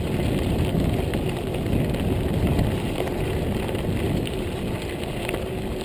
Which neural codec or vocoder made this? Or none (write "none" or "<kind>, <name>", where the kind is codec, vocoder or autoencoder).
none